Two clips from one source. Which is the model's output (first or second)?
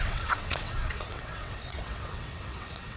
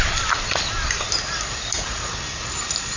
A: first